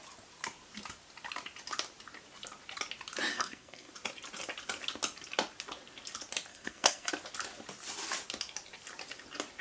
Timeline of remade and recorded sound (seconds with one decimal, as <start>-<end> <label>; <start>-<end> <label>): 0.0-3.3 recorded; 3.3-3.9 remade; 3.9-6.5 recorded; 6.5-7.1 remade; 7.1-9.6 recorded